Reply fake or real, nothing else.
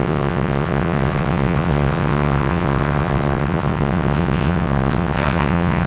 fake